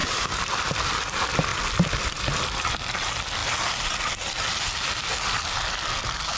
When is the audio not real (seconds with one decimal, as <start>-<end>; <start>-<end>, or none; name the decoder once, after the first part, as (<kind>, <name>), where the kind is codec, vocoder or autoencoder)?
0.0-0.7 (vocoder, BigVGAN v2); 1.5-2.2; 3.4-5.1